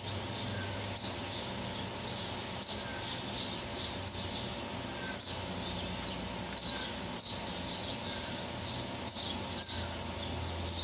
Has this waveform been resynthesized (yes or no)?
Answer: no